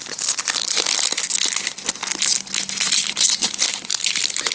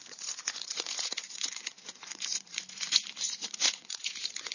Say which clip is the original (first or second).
first